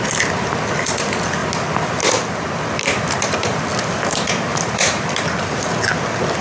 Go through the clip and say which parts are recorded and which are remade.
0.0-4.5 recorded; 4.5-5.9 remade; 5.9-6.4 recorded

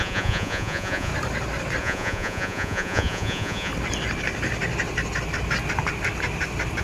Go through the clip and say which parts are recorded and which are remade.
0.0-1.1 remade; 1.1-1.8 recorded; 1.8-3.7 remade; 3.7-6.8 recorded

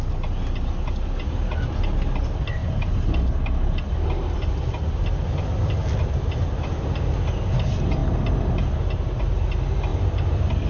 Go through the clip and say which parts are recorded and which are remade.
0.0-10.7 recorded

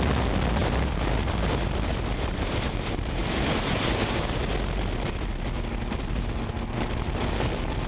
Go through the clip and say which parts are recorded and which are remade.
0.0-0.6 recorded; 0.6-4.4 remade; 4.4-7.9 recorded